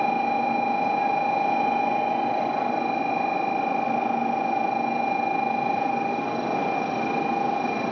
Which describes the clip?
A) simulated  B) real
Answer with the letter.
B